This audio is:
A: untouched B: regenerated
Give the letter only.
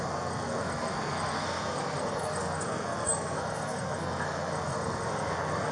B